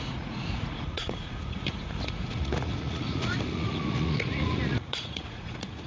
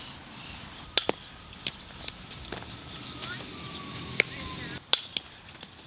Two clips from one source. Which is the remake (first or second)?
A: first